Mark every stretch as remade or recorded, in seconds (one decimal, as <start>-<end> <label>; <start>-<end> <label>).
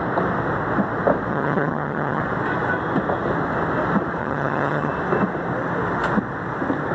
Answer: 0.0-1.3 recorded; 1.3-2.2 remade; 2.2-4.2 recorded; 4.2-4.9 remade; 4.9-6.9 recorded